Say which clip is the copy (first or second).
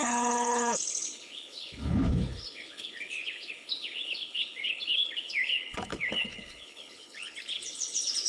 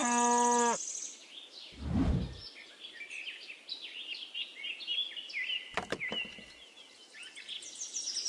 first